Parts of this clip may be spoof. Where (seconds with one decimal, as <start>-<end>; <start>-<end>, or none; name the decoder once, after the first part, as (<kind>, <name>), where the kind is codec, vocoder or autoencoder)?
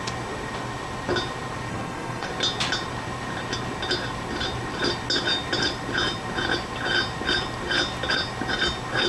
1.7-2.3 (codec, SNAC)